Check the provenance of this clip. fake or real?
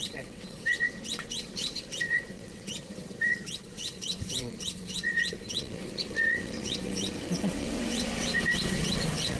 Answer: fake